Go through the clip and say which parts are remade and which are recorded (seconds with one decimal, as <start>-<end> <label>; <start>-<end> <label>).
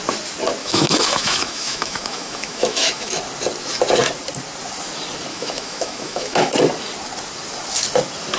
0.0-0.6 recorded; 0.6-3.2 remade; 3.2-5.3 recorded; 5.3-6.5 remade; 6.5-8.4 recorded